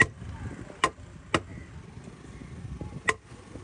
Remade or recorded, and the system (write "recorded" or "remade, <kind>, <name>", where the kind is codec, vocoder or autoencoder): recorded